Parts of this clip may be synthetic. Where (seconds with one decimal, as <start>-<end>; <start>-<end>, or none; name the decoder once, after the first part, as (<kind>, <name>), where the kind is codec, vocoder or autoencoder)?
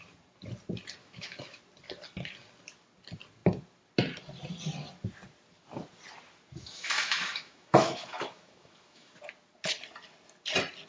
1.0-1.6 (autoencoder, DAC-VAE); 6.6-9.2